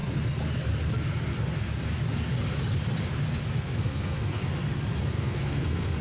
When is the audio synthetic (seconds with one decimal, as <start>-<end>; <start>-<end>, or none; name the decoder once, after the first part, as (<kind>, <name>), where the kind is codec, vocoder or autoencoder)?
3.6-4.4 (codec, SNAC); 5.0-6.0